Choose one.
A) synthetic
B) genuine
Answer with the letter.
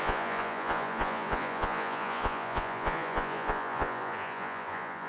A